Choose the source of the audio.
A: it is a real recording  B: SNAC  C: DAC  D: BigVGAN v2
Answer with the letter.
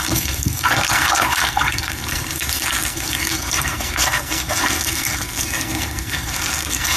B